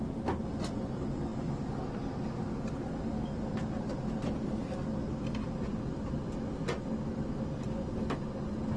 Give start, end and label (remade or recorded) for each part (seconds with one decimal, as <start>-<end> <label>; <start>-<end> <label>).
0.0-8.8 recorded